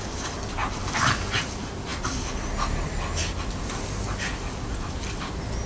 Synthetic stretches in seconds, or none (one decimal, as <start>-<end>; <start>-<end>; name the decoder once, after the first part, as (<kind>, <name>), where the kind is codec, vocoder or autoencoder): 0.6-1.1 (vocoder, BigVGAN v2)